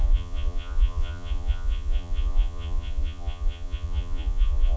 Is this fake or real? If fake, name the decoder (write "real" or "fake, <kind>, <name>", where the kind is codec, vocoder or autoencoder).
fake, vocoder, Vocos